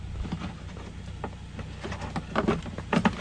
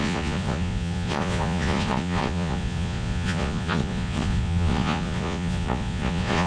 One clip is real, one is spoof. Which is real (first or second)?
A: first